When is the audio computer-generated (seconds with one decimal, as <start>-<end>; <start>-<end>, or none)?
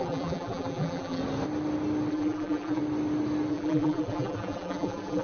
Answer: 0.0-1.2; 2.1-2.8; 3.5-5.2